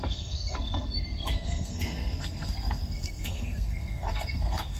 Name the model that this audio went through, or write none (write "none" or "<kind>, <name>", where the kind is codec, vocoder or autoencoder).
codec, SNAC